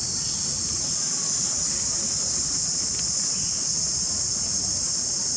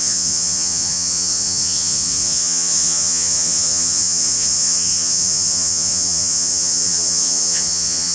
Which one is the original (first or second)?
first